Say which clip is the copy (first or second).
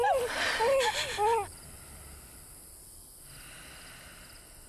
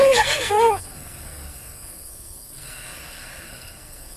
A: second